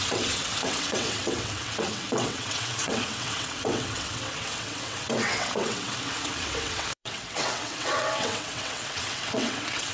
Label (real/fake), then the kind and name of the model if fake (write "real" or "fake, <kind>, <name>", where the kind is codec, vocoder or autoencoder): fake, vocoder, WaveNeXt